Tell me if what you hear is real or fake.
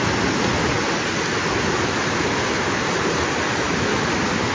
real